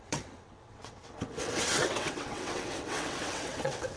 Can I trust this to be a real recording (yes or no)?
no